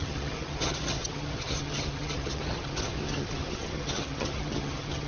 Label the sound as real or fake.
fake